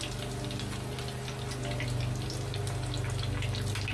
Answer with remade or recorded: recorded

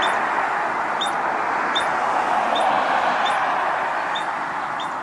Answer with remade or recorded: recorded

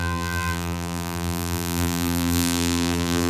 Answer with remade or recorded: remade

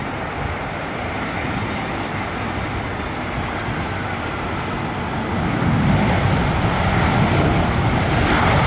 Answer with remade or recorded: recorded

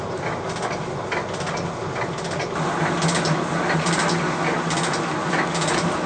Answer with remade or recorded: recorded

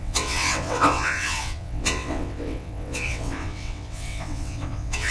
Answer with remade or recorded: remade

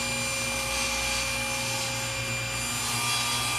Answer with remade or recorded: recorded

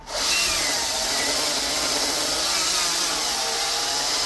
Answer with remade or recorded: recorded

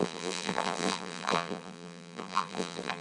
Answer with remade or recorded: remade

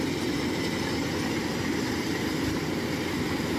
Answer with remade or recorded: recorded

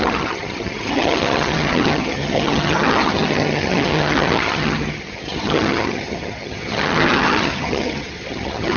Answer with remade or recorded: remade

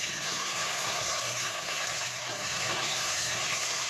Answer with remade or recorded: remade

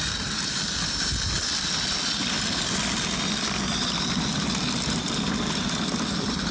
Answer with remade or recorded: recorded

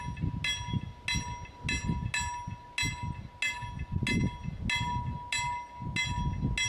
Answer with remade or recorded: recorded